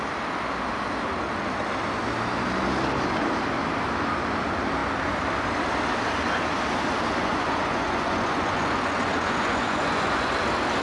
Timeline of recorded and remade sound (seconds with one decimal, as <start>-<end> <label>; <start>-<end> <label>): 0.0-7.2 recorded; 7.2-10.3 remade; 10.3-10.8 recorded

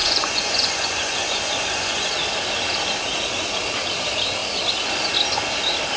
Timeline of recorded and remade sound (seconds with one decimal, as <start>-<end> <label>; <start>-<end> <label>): 0.0-2.1 remade; 2.1-6.0 recorded

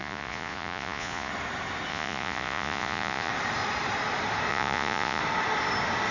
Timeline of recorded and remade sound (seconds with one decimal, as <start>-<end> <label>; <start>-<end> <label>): 0.0-1.3 remade; 1.3-1.9 recorded; 1.9-3.3 remade; 3.3-4.5 recorded; 4.5-5.2 remade; 5.2-6.1 recorded